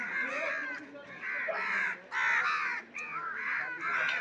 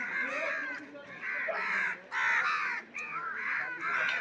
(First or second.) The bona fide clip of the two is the first